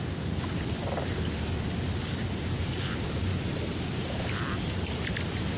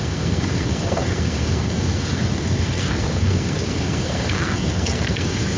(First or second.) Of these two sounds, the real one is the first